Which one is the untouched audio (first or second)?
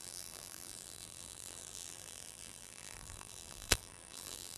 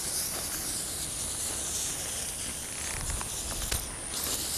second